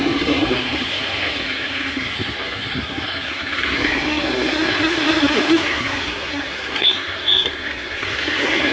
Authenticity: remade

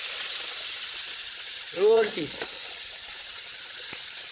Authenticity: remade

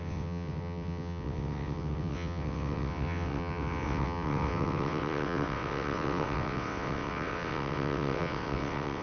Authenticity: remade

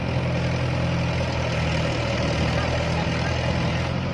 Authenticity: recorded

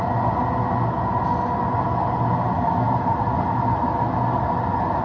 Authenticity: recorded